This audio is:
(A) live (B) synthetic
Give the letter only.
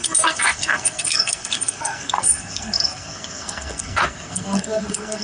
B